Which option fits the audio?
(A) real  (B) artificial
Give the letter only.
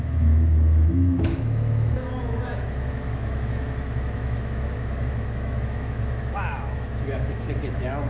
B